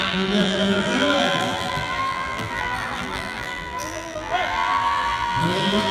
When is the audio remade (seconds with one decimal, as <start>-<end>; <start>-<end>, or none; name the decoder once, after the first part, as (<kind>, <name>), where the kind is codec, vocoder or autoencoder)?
0.0-5.9 (vocoder, BigVGAN v2)

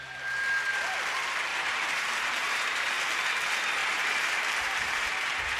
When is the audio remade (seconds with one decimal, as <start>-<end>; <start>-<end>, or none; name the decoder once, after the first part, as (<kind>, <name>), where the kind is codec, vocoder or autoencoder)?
1.5-2.9 (vocoder, BigVGAN v2); 3.8-5.6

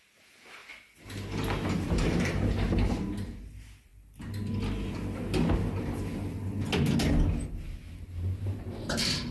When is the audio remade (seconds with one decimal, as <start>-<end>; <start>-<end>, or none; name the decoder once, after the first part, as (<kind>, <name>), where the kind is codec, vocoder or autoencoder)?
0.0-0.6 (vocoder, BigVGAN v2); 1.7-3.9; 8.8-9.3